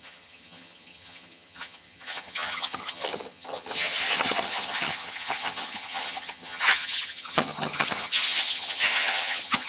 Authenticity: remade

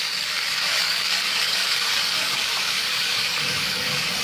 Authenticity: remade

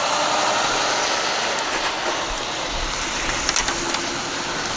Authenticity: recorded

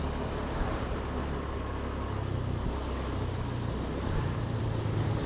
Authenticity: recorded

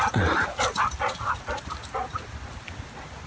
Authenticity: recorded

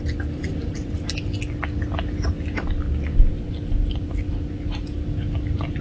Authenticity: recorded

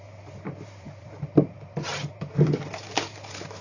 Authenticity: remade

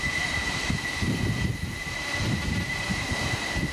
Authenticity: remade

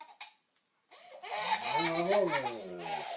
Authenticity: recorded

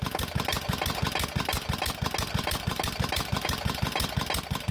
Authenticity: recorded